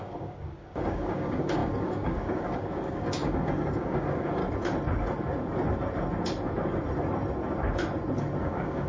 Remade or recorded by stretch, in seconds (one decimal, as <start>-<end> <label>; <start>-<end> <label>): 0.0-4.4 remade; 4.4-8.4 recorded; 8.4-8.9 remade